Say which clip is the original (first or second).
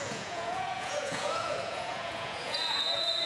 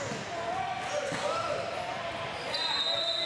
second